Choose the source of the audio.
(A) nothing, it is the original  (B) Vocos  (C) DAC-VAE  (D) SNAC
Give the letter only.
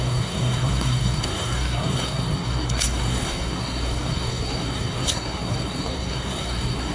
D